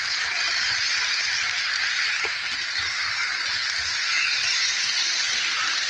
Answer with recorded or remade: recorded